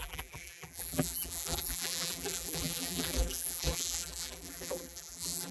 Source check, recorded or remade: remade